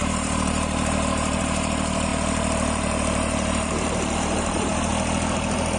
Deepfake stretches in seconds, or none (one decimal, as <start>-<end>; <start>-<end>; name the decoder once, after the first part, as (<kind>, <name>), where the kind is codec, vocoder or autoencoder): 0.0-2.1 (vocoder, BigVGAN v2); 4.2-4.9